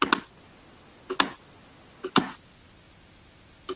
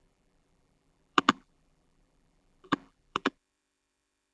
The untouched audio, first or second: first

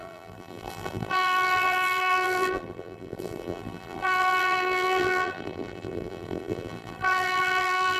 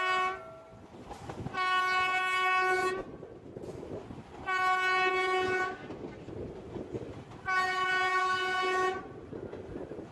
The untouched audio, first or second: second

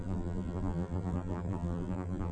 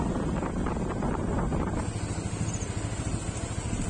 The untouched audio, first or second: second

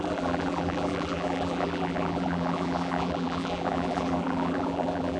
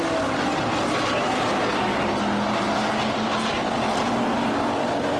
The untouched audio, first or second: second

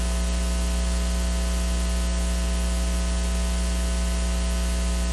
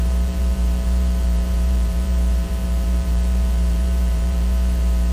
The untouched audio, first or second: first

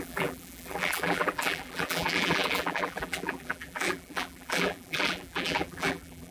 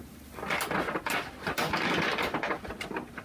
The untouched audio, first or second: second